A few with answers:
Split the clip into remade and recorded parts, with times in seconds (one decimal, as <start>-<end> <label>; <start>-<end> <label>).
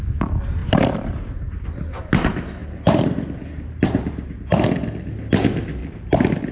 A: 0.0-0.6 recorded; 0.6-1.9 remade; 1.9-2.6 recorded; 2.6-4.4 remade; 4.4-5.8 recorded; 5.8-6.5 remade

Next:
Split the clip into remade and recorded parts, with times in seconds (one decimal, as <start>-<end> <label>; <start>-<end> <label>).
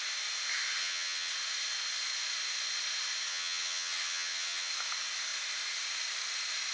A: 0.0-0.8 recorded; 0.8-1.3 remade; 1.3-3.3 recorded; 3.3-4.7 remade; 4.7-6.7 recorded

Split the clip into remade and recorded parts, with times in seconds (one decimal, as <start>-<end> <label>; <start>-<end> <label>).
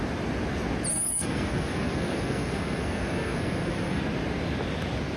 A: 0.0-0.9 recorded; 0.9-4.0 remade; 4.0-5.2 recorded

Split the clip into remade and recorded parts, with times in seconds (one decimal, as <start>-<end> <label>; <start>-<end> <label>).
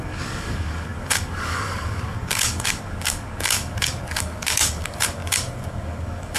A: 0.0-6.4 remade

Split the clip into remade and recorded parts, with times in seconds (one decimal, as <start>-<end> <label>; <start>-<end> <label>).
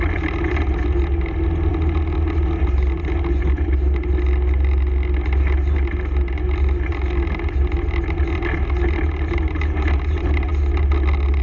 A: 0.0-11.4 recorded